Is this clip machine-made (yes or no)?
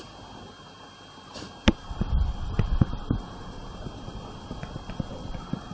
no